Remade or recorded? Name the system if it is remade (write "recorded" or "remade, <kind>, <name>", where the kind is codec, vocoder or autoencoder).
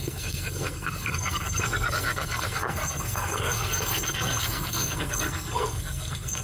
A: remade, codec, SNAC